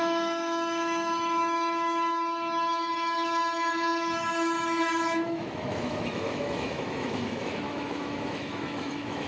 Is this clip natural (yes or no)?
no